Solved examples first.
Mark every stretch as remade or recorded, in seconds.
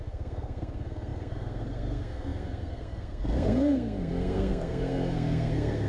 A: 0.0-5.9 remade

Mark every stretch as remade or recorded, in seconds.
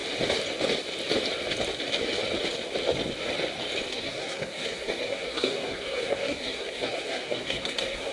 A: 0.0-3.9 recorded; 3.9-8.1 remade